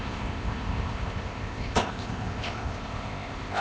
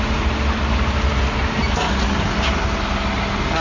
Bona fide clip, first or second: second